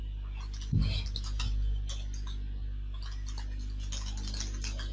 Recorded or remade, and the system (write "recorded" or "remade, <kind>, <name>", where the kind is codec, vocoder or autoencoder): recorded